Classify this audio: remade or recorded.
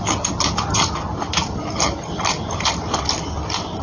recorded